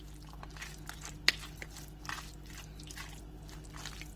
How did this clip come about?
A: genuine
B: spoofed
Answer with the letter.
A